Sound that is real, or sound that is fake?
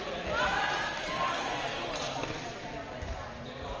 real